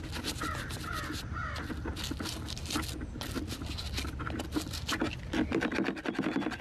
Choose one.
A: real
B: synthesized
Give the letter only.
A